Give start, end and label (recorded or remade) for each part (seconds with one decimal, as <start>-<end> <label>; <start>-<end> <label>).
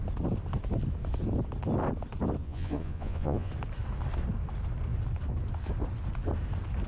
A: 0.0-2.4 recorded; 2.4-3.5 remade; 3.5-6.9 recorded